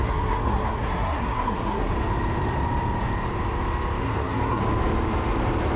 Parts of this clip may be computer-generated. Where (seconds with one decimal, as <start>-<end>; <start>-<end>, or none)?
0.0-1.9; 4.0-4.6